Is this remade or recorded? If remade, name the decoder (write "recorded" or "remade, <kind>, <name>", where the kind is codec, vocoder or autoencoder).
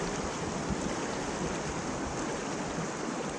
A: recorded